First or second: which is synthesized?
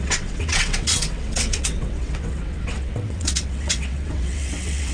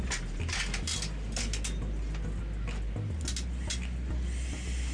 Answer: first